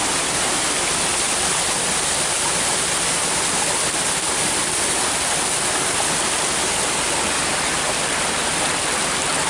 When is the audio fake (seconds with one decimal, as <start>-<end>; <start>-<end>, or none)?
none